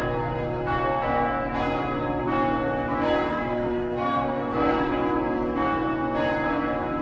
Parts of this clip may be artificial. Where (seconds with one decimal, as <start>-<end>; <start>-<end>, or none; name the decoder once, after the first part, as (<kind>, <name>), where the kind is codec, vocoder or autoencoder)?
3.3-4.9 (codec, SNAC)